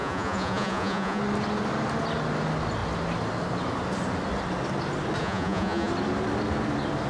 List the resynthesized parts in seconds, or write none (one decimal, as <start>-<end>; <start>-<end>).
0.0-1.2; 5.2-5.9